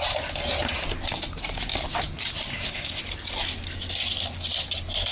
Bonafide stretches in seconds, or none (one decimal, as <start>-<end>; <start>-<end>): 0.0-2.5; 3.0-5.1